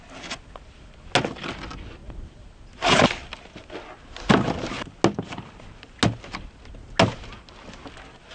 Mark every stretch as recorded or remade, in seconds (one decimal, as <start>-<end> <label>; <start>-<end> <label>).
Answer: 0.0-8.3 recorded